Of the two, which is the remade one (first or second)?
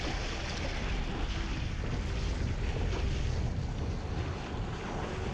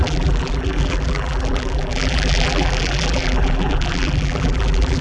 second